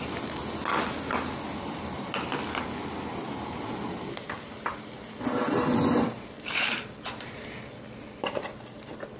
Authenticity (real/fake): real